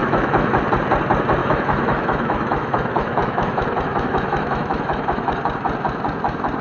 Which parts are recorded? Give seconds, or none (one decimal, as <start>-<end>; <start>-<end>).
0.6-1.4; 5.4-6.6